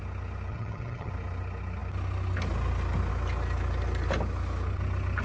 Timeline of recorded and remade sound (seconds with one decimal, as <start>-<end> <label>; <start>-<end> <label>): 0.0-0.5 recorded; 0.5-1.1 remade; 1.1-5.2 recorded